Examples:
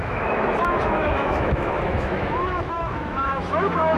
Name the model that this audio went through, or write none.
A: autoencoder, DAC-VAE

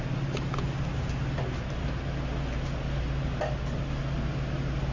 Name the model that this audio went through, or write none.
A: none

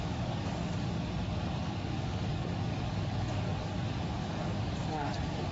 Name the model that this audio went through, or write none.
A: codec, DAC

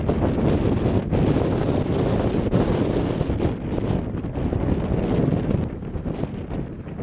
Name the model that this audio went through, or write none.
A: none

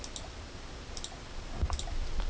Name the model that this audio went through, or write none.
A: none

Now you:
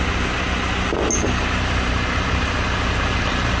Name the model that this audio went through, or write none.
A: none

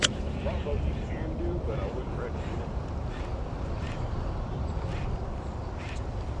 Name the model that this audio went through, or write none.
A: vocoder, BigVGAN v2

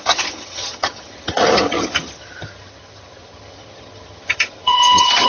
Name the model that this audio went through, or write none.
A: vocoder, HiFi-GAN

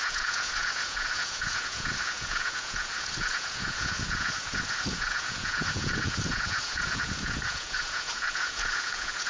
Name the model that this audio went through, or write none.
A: vocoder, Vocos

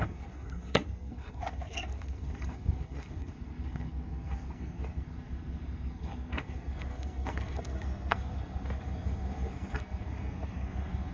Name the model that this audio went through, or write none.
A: codec, SNAC